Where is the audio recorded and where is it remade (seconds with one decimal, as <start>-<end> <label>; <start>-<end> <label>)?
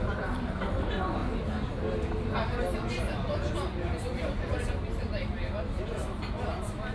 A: 0.0-6.0 recorded; 6.0-6.9 remade